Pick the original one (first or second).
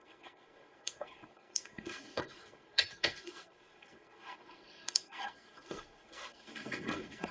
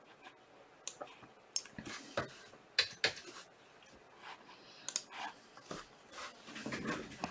second